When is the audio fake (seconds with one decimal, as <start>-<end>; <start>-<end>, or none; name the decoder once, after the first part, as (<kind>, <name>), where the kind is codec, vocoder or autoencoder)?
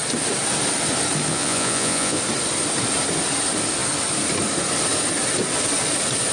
1.3-2.2 (vocoder, Vocos)